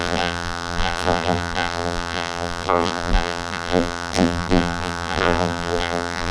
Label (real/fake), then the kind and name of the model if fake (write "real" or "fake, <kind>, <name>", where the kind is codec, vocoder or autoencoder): fake, vocoder, BigVGAN v2